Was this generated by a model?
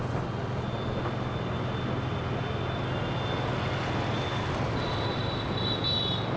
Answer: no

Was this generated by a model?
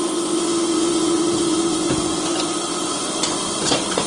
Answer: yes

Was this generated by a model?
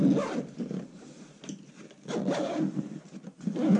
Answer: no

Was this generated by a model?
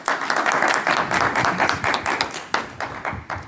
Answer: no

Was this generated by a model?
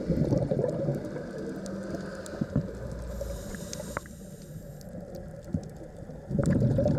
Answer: no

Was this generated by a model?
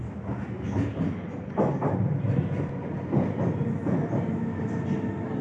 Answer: no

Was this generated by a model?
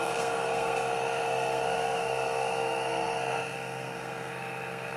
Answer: yes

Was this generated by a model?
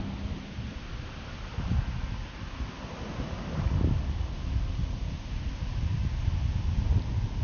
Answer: no